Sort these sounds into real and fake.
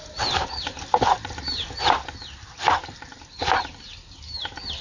real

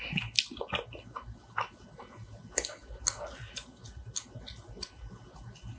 real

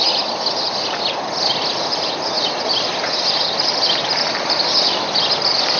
real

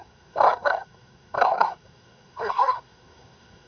fake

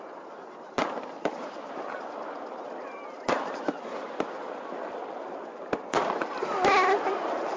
real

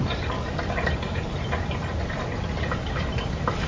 real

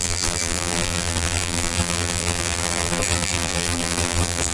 fake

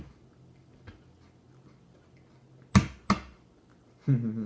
real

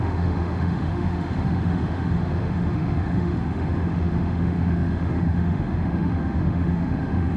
fake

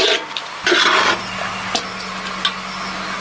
real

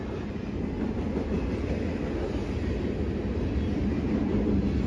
real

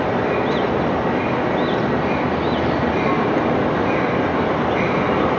real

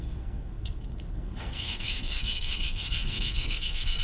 fake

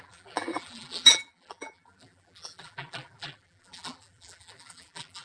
fake